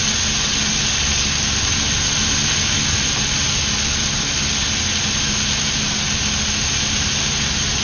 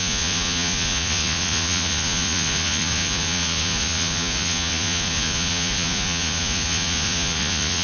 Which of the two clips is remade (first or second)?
second